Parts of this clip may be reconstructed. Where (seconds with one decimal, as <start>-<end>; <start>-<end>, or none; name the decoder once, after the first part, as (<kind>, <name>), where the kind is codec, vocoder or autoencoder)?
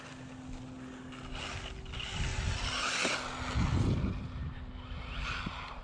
none